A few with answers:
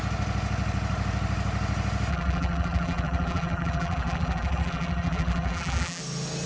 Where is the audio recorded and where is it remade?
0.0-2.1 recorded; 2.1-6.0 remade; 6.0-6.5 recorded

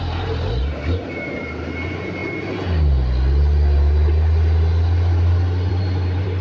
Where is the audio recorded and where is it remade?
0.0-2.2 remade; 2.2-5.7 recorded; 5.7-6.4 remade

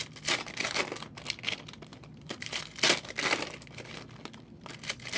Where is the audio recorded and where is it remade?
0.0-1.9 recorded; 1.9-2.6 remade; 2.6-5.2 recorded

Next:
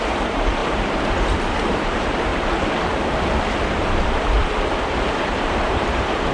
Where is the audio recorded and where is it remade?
0.0-2.3 remade; 2.3-3.6 recorded; 3.6-4.4 remade; 4.4-5.1 recorded; 5.1-6.3 remade

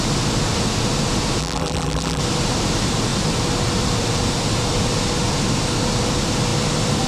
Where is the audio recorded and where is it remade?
0.0-1.4 recorded; 1.4-2.2 remade; 2.2-7.1 recorded

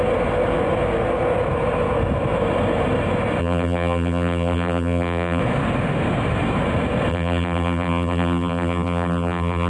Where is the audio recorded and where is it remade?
0.0-3.4 recorded; 3.4-5.4 remade; 5.4-7.1 recorded; 7.1-9.7 remade

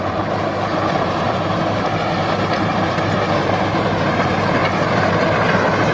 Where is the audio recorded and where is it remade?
0.0-4.6 remade; 4.6-5.9 recorded

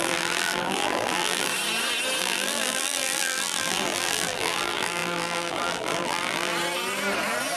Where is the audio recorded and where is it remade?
0.0-1.5 remade; 1.5-2.2 recorded; 2.2-6.5 remade; 6.5-7.6 recorded